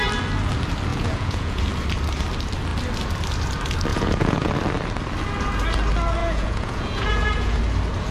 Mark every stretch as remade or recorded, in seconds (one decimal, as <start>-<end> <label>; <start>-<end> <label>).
0.0-0.9 recorded; 0.9-1.6 remade; 1.6-3.9 recorded; 3.9-4.5 remade; 4.5-6.2 recorded; 6.2-7.6 remade; 7.6-8.1 recorded